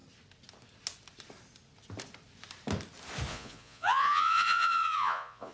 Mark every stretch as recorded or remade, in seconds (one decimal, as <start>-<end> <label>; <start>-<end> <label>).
0.0-3.3 recorded; 3.3-5.5 remade